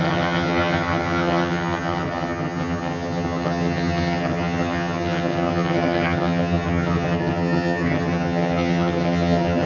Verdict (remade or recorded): remade